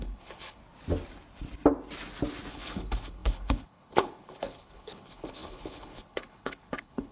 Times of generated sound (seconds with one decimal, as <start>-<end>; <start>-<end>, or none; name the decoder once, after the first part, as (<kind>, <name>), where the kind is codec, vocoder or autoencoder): 0.0-0.6 (codec, HILCodec); 2.5-7.1